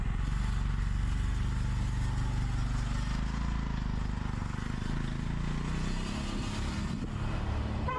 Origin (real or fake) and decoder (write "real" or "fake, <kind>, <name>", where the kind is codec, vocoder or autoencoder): real